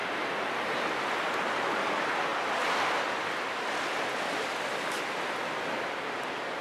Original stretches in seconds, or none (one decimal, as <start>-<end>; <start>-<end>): 0.0-6.6